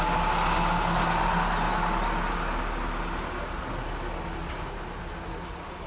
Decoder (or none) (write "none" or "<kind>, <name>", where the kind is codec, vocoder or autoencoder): none